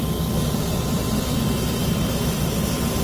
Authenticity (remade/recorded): remade